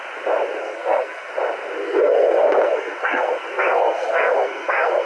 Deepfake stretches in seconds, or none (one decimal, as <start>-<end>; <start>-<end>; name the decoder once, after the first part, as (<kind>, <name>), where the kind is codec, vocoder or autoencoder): 0.6-1.3 (codec, SNAC); 1.8-5.1